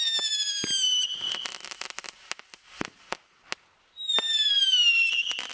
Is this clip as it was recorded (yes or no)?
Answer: yes